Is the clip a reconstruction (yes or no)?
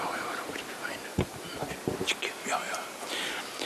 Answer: no